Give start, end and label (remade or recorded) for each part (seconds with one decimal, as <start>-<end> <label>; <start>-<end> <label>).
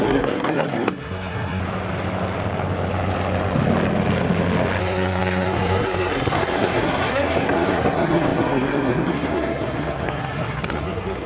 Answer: 0.0-1.6 remade; 1.6-4.8 recorded; 4.8-11.3 remade